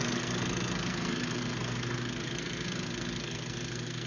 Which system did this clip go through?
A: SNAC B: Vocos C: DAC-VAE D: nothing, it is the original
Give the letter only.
A